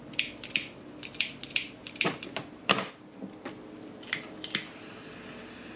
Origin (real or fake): real